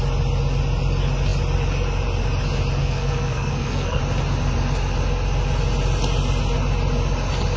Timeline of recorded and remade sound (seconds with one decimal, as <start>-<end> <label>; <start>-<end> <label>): 0.0-2.8 recorded; 2.8-4.0 remade; 4.0-7.6 recorded